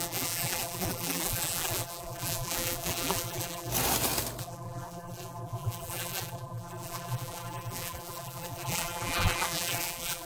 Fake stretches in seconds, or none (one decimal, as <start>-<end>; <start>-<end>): 0.0-3.7; 4.4-10.3